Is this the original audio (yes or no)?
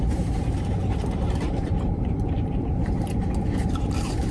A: no